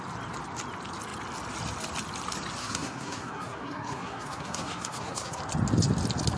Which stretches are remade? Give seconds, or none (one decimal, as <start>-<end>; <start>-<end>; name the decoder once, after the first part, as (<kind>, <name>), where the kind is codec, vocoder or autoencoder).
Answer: 2.6-5.4 (codec, SNAC)